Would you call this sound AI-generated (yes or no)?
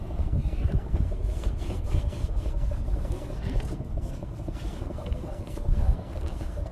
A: yes